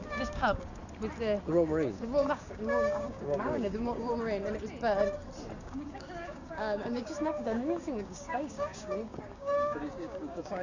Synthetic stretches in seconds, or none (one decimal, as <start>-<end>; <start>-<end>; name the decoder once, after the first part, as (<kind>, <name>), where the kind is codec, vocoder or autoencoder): 0.0-0.8 (codec, DAC); 1.5-4.1; 5.6-10.6